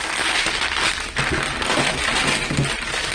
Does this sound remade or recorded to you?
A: recorded